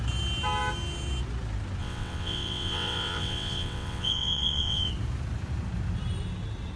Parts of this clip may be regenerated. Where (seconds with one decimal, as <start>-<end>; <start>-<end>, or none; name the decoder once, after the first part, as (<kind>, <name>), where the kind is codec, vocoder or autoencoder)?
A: 1.8-4.9 (vocoder, WaveNeXt)